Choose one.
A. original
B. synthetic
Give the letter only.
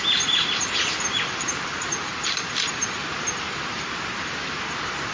B